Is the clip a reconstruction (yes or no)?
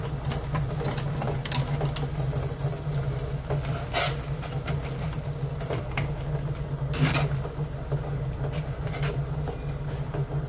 no